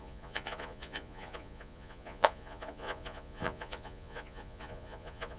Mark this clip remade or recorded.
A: remade